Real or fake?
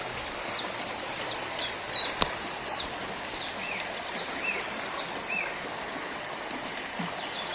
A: real